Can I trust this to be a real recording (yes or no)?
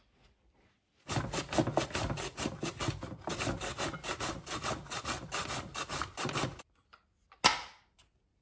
yes